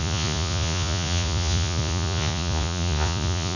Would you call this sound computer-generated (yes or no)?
yes